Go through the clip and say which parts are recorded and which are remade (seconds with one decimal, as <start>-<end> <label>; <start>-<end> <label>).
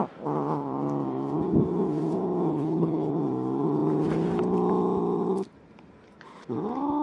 0.0-2.5 recorded; 2.5-3.1 remade; 3.1-7.0 recorded